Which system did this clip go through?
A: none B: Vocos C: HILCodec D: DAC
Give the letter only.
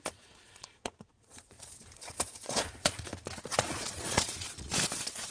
B